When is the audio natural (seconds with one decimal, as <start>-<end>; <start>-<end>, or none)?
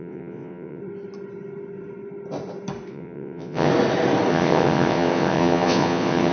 0.8-2.9; 3.7-4.3